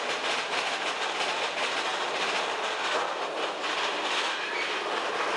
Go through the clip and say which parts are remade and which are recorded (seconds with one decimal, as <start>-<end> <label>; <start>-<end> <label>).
0.0-5.4 recorded